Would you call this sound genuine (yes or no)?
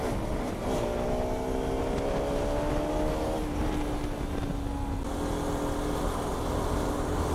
yes